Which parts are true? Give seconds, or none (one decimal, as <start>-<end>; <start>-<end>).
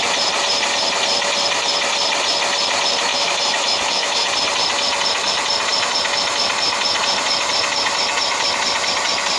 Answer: 0.0-3.1; 4.3-9.4